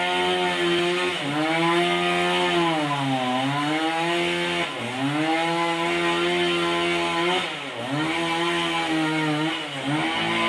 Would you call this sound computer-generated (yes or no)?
no